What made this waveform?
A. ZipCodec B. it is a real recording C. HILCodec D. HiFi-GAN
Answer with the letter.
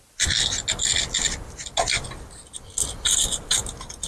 B